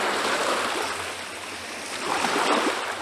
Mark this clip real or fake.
real